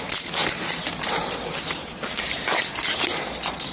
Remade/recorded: recorded